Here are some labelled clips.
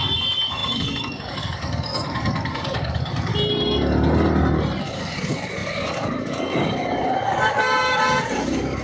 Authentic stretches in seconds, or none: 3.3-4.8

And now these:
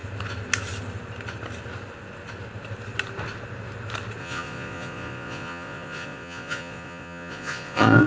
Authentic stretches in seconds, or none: 0.0-4.2

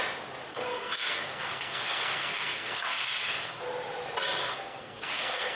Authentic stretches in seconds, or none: 0.0-0.5; 3.6-4.4

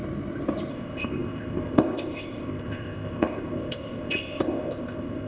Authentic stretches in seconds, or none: 0.0-0.7

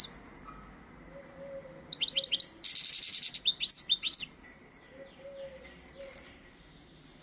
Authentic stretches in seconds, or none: 0.0-7.2